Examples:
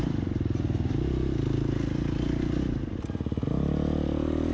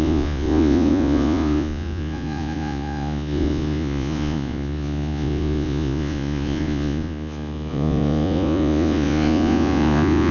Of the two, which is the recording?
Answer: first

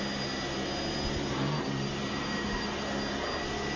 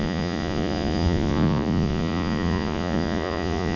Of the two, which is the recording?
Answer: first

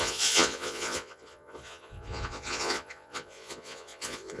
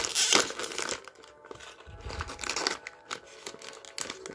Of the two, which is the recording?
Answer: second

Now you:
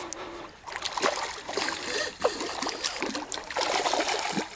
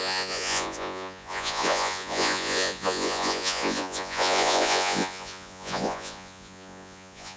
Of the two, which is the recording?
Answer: first